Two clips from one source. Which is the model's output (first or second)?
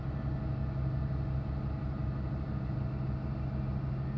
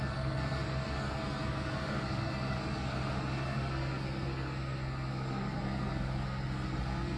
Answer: second